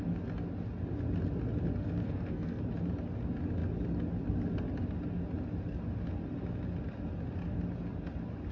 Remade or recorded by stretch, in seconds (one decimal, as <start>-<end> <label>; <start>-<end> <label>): 0.0-1.8 recorded; 1.8-2.6 remade; 2.6-8.5 recorded